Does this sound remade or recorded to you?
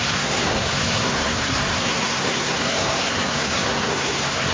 remade